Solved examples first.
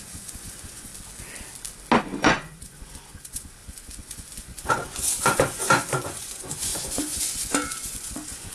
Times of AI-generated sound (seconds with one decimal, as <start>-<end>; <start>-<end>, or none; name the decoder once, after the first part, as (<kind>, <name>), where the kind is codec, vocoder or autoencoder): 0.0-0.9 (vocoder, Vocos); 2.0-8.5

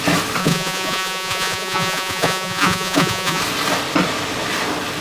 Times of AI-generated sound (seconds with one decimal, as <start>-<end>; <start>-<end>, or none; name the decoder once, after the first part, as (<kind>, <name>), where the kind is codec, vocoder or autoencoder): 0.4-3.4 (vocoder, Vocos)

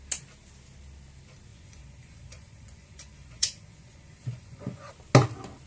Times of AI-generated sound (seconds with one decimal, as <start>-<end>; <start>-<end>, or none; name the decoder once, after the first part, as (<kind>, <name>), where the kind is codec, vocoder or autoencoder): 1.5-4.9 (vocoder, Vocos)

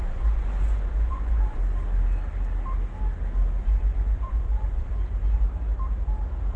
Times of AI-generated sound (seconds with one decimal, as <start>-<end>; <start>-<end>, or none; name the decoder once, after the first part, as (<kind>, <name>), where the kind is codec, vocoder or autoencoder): 0.0-1.6 (vocoder, Vocos); 3.6-4.9

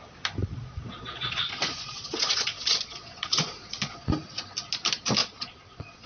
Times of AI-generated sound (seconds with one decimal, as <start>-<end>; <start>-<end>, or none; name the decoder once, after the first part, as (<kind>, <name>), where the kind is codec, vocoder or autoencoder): 0.4-4.1 (vocoder, Vocos); 5.2-6.1